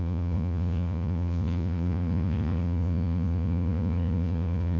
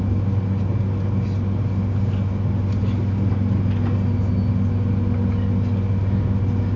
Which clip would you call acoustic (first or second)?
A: second